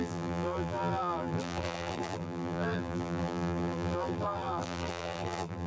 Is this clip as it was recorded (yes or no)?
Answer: no